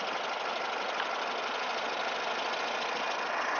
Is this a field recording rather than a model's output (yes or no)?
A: yes